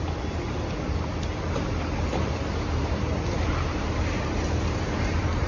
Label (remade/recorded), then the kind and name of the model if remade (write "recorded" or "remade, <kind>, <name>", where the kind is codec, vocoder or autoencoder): recorded